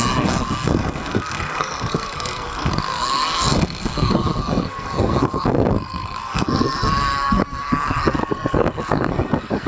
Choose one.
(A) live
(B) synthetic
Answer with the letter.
B